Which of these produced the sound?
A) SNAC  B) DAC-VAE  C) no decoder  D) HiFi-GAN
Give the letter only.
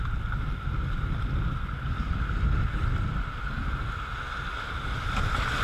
C